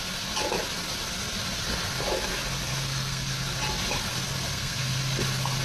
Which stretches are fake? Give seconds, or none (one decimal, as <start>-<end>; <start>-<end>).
2.7-3.3; 4.4-5.0